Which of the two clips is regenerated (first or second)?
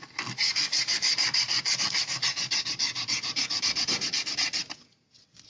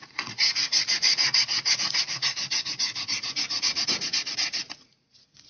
second